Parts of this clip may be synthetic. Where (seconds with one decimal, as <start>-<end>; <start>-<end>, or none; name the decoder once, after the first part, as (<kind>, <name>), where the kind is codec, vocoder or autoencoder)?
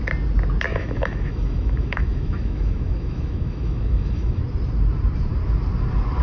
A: 0.7-4.4 (autoencoder, DAC-VAE)